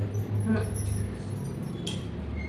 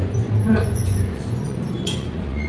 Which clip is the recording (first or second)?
first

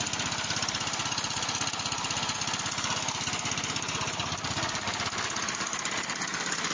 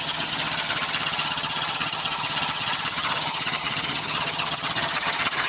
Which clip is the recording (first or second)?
first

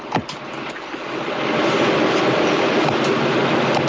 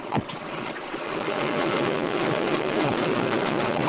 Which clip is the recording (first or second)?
first